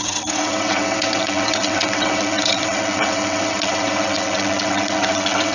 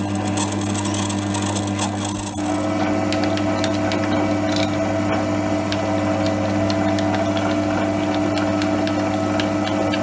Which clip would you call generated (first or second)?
first